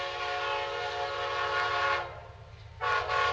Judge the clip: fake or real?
real